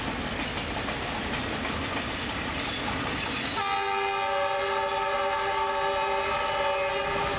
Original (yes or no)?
yes